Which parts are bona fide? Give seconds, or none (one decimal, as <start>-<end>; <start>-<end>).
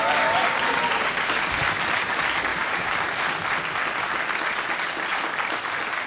0.0-2.5; 3.2-6.1